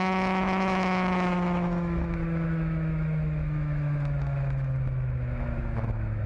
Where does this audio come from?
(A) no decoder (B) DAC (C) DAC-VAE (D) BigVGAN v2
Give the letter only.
C